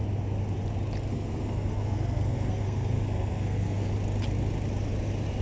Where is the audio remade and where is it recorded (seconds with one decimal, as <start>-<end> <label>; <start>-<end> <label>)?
0.0-1.1 recorded; 1.1-3.9 remade; 3.9-5.4 recorded